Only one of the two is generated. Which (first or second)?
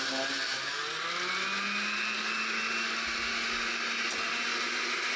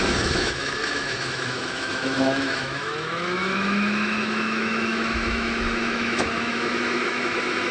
second